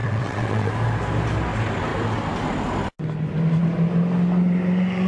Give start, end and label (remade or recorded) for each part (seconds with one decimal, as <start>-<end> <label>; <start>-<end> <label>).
0.0-0.7 remade; 0.7-5.1 recorded